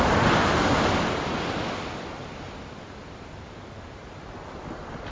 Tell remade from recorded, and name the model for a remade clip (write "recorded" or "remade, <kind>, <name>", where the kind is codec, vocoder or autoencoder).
recorded